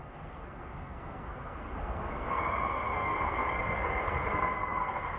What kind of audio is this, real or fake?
fake